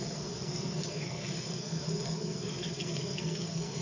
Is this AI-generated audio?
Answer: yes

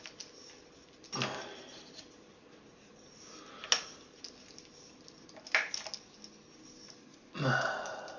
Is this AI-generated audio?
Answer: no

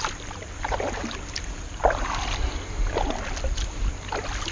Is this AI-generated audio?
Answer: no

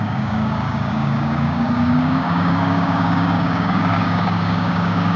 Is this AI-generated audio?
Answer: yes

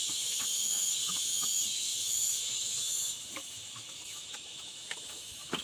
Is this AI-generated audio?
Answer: yes